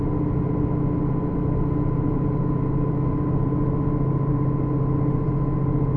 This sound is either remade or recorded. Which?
recorded